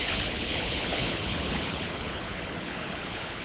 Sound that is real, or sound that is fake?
fake